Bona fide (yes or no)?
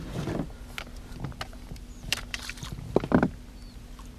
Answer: yes